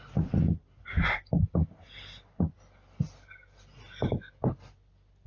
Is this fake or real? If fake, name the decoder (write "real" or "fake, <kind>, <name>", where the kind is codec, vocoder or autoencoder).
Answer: real